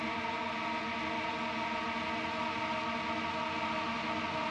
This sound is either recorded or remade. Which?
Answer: recorded